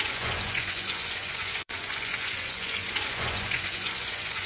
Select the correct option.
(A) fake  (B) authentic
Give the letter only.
A